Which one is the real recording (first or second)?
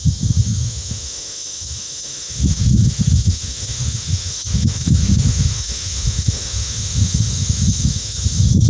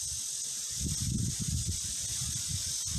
second